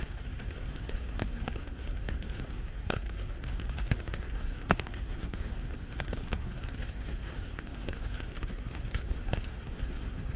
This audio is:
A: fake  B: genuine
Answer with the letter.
A